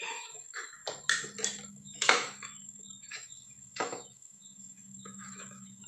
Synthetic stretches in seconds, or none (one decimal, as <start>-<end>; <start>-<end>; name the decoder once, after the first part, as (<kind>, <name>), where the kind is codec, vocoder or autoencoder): 0.0-0.8 (autoencoder, DAC-VAE); 1.7-5.9